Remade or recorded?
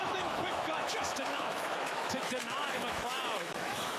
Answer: remade